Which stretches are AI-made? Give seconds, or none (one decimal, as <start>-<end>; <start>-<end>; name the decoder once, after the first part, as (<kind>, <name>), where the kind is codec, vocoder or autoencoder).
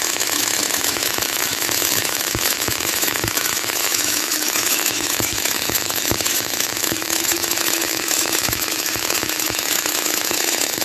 0.0-10.8 (autoencoder, DAC-VAE)